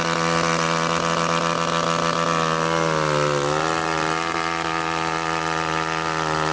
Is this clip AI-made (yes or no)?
no